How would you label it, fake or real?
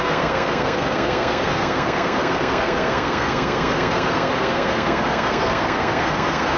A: fake